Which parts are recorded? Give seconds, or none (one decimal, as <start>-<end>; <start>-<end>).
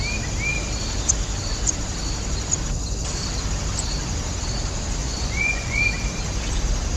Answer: 0.0-5.0; 5.8-7.0